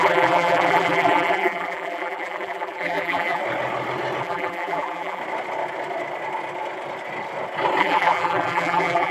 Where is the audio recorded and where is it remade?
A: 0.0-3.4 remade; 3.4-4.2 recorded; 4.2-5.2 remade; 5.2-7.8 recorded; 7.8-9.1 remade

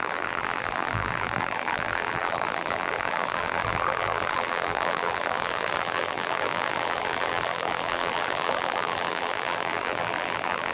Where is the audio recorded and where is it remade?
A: 0.0-10.7 remade

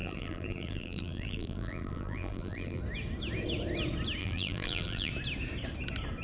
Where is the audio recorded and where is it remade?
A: 0.0-2.8 remade; 2.8-4.2 recorded; 4.2-5.1 remade; 5.1-6.2 recorded

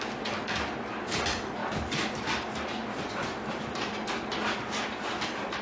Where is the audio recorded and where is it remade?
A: 0.0-2.8 recorded; 2.8-4.0 remade; 4.0-5.6 recorded

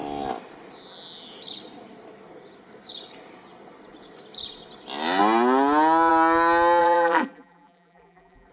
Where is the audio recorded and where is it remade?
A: 0.0-6.8 recorded; 6.8-8.5 remade

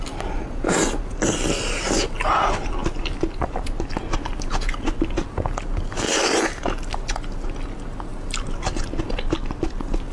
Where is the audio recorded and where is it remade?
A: 0.0-2.8 recorded; 2.8-3.6 remade; 3.6-10.1 recorded